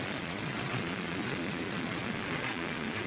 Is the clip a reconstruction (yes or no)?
yes